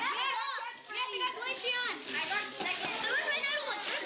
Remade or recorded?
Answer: recorded